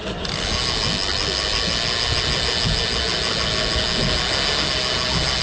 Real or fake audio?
real